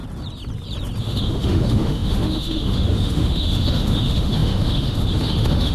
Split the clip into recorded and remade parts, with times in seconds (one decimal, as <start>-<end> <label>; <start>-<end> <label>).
0.0-1.0 recorded; 1.0-5.7 remade